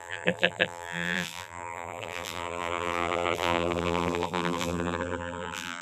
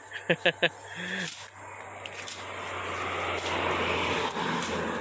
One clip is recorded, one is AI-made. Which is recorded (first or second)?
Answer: second